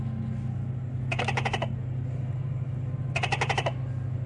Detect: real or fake real